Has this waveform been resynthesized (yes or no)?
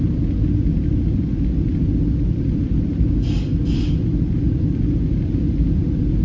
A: no